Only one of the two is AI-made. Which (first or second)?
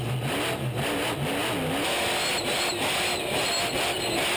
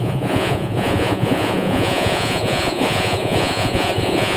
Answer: second